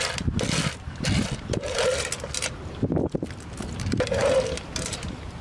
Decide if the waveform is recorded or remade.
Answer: recorded